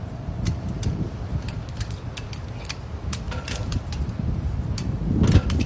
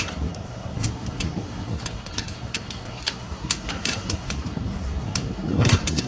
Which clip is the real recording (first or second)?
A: first